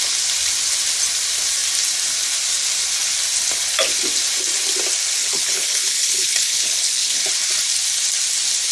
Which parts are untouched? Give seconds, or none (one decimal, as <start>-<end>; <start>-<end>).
0.0-5.2; 7.2-8.7